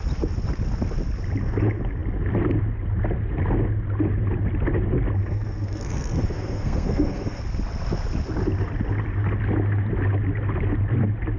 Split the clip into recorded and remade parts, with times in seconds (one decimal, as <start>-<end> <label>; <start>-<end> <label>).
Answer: 0.0-5.2 recorded; 5.2-7.4 remade; 7.4-11.4 recorded

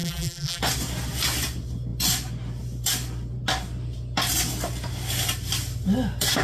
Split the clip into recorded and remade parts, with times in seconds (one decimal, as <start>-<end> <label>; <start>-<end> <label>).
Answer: 0.0-0.6 remade; 0.6-6.4 recorded